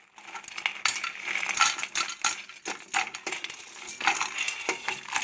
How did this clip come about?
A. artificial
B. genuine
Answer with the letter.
B